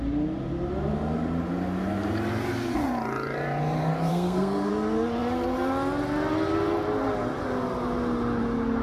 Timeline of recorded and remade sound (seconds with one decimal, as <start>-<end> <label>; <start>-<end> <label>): 0.0-4.1 recorded; 4.1-4.7 remade; 4.7-8.8 recorded